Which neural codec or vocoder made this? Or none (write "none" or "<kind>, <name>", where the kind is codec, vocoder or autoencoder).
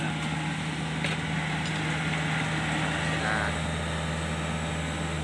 none